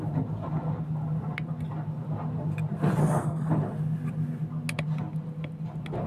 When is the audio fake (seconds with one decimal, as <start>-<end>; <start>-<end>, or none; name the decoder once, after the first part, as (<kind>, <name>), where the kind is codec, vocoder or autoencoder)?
3.0-3.5 (codec, SNAC)